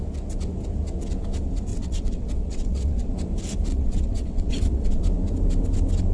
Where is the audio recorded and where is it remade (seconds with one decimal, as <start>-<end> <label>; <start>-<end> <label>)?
0.0-1.7 recorded; 1.7-3.1 remade; 3.1-3.7 recorded; 3.7-5.0 remade; 5.0-6.1 recorded